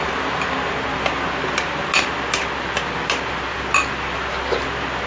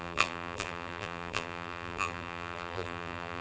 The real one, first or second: first